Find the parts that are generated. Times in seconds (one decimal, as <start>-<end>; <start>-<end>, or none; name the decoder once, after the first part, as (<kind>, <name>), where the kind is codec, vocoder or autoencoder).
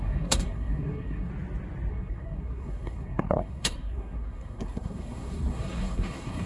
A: 0.0-1.3 (codec, SNAC); 1.9-6.5